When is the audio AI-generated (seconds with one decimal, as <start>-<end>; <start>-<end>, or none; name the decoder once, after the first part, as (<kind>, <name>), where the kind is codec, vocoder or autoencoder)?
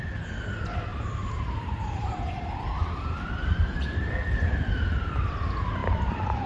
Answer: 0.9-4.1 (vocoder, BigVGAN v2); 5.8-6.5